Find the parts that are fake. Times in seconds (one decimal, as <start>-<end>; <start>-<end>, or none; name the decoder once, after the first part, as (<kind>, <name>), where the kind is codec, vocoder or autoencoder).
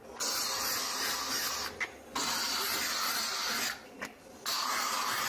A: none